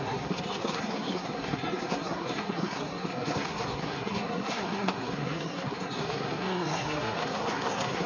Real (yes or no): no